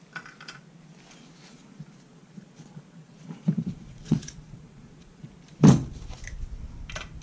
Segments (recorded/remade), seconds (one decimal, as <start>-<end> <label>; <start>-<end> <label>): 0.0-2.1 recorded; 2.1-5.3 remade; 5.3-7.2 recorded